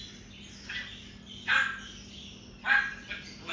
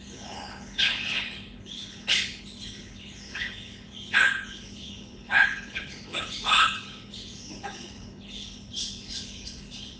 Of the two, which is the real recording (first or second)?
first